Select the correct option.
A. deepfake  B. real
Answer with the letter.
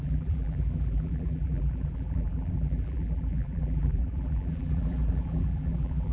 A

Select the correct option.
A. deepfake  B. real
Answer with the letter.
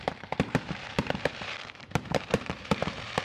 A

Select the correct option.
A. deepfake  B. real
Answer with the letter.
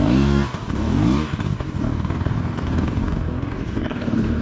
A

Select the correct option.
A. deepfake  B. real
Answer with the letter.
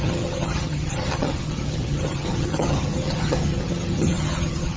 A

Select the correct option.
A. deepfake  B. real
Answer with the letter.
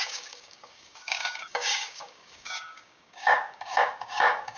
A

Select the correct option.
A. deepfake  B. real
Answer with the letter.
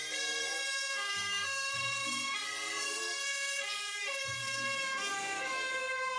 A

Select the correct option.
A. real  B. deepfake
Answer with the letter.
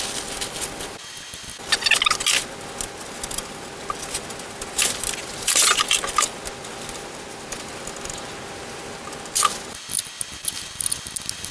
A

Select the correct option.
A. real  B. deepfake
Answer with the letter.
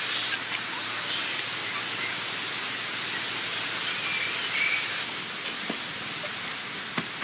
A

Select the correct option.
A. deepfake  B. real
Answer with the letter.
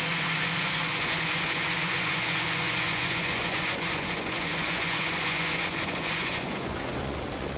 A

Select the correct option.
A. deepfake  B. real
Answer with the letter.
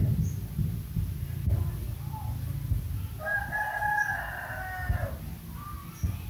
B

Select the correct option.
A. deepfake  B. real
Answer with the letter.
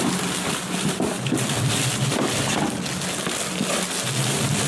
B